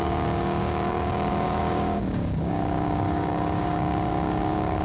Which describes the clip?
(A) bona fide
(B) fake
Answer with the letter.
B